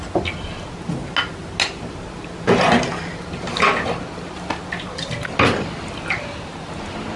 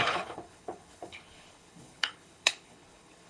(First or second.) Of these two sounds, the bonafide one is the first